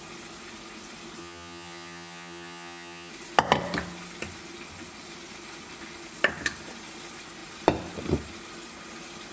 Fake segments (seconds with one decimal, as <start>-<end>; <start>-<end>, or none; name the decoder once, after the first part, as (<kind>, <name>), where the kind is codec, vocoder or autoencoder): 1.2-3.1 (vocoder, HiFi-GAN)